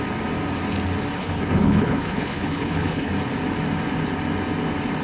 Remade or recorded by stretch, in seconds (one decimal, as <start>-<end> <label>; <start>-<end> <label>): 0.0-1.2 recorded; 1.2-3.1 remade; 3.1-5.0 recorded